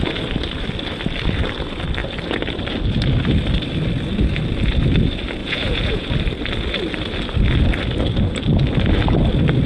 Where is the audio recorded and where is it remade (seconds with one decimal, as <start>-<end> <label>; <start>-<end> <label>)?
0.0-5.4 recorded; 5.4-6.1 remade; 6.1-9.7 recorded